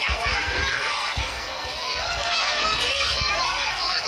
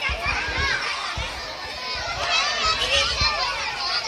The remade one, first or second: first